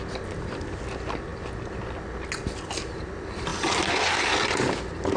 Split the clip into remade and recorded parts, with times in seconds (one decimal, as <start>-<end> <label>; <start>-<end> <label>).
0.0-5.2 recorded